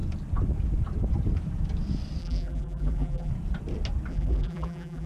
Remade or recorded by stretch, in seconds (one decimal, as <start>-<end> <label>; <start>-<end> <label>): 0.0-2.2 recorded; 2.2-3.3 remade; 3.3-4.1 recorded; 4.1-5.1 remade